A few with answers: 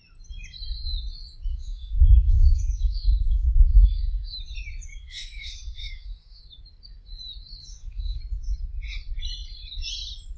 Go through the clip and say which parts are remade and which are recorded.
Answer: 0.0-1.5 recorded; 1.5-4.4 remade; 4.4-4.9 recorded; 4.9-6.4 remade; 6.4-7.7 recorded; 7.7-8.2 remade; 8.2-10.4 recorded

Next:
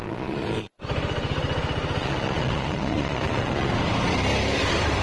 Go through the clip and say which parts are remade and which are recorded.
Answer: 0.0-0.8 remade; 0.8-2.0 recorded; 2.0-3.7 remade; 3.7-5.0 recorded

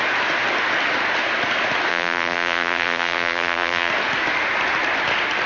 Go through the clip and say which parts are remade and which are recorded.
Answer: 0.0-1.9 recorded; 1.9-3.9 remade; 3.9-5.5 recorded

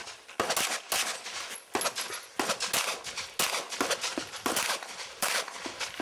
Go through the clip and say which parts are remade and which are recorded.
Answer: 0.0-4.1 recorded; 4.1-5.3 remade; 5.3-6.0 recorded

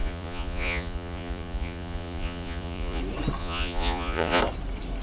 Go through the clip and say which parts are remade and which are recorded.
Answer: 0.0-3.0 remade; 3.0-3.4 recorded; 3.4-4.4 remade; 4.4-5.0 recorded